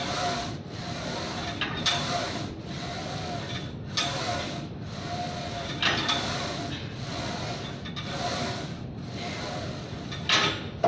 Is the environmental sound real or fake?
real